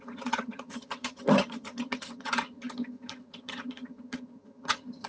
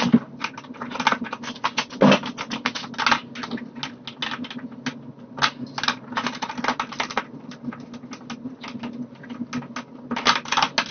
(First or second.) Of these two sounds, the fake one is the first